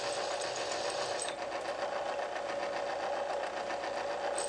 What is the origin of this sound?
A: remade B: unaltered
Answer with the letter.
B